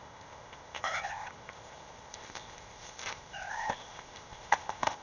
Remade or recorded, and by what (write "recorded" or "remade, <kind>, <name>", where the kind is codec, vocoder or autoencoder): remade, codec, ZipCodec